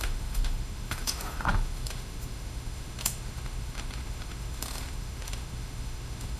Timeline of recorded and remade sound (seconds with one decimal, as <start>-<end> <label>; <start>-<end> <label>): 0.0-6.4 remade